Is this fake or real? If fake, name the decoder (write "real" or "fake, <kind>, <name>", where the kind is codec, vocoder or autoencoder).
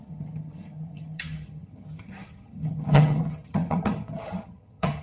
fake, vocoder, HiFi-GAN